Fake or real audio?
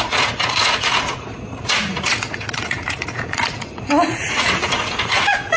fake